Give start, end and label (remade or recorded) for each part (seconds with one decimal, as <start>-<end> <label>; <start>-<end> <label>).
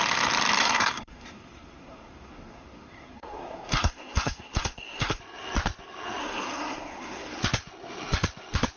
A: 0.0-0.6 recorded; 0.6-5.2 remade; 5.2-6.2 recorded; 6.2-7.4 remade; 7.4-8.8 recorded